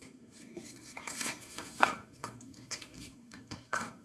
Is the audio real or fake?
fake